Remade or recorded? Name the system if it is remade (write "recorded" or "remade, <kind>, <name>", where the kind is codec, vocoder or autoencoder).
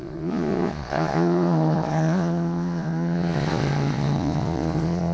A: remade, vocoder, Vocos